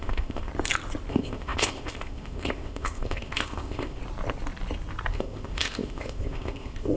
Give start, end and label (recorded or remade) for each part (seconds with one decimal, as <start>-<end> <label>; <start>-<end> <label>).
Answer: 0.0-0.5 remade; 0.5-1.1 recorded; 1.1-4.0 remade; 4.0-5.1 recorded; 5.1-7.0 remade

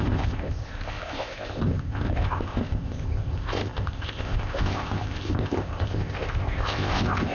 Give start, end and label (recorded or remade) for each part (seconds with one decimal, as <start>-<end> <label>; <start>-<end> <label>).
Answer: 0.0-7.3 remade

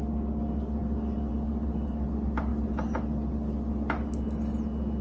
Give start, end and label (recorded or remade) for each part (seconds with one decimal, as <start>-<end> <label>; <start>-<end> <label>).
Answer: 0.0-5.0 recorded

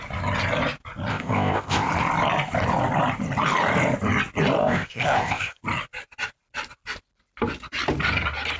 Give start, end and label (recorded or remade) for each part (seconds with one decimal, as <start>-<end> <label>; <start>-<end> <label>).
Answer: 0.0-1.1 recorded; 1.1-1.9 remade; 1.9-4.6 recorded; 4.6-5.6 remade; 5.6-8.6 recorded

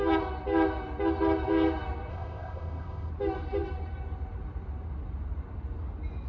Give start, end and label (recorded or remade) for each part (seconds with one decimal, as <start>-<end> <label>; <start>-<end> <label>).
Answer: 0.0-2.1 recorded; 2.1-3.1 remade; 3.1-6.3 recorded

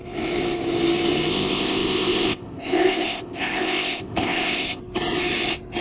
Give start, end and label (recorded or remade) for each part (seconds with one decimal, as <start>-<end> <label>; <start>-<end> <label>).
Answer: 0.0-1.3 recorded; 1.3-4.8 remade; 4.8-5.8 recorded